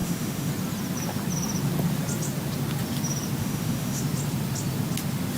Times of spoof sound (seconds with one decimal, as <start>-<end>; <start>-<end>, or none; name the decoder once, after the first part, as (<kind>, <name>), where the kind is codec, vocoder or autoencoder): 0.0-0.5 (autoencoder, DAC-VAE); 3.4-4.0